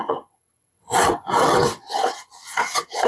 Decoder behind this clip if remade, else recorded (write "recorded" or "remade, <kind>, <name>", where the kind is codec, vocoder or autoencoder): remade, vocoder, WaveNeXt